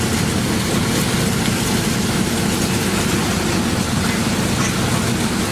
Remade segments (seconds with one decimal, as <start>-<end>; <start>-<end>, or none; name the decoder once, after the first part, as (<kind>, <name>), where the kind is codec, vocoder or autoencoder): none

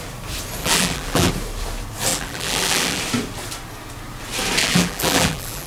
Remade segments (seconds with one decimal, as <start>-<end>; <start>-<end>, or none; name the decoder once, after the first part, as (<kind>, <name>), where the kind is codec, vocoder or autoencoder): 0.6-1.3 (vocoder, BigVGAN v2); 2.1-3.0; 4.6-5.7

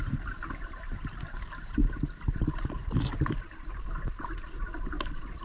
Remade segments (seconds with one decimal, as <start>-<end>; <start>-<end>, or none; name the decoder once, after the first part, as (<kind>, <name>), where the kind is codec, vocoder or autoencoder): none